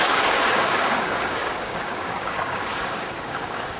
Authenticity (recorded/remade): remade